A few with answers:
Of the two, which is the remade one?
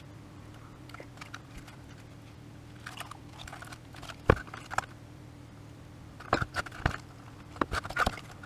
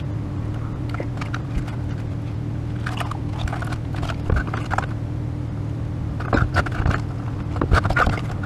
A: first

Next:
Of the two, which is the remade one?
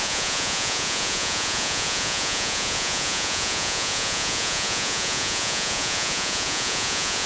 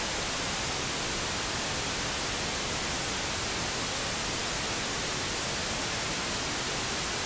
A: first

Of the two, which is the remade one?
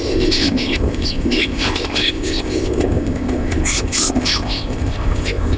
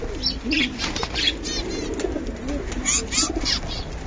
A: first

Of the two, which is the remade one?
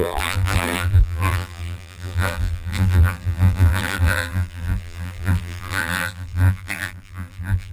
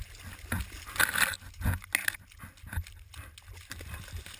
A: first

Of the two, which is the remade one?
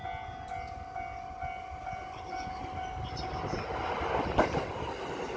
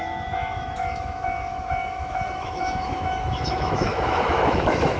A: second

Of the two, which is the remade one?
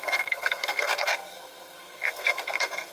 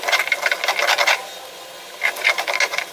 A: first